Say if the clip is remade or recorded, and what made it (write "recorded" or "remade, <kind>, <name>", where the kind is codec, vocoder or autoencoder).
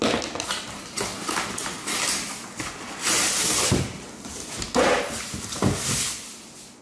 recorded